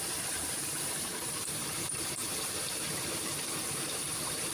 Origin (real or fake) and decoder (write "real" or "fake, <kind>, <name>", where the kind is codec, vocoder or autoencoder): fake, vocoder, BigVGAN v2